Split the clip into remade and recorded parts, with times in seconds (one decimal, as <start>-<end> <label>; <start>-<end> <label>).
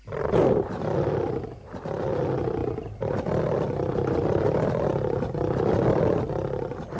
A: 0.0-2.6 recorded; 2.6-6.2 remade; 6.2-7.0 recorded